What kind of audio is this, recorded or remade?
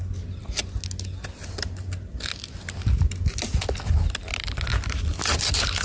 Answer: recorded